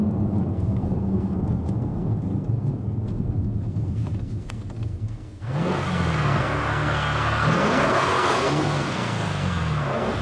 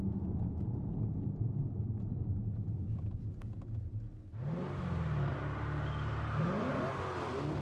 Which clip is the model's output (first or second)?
first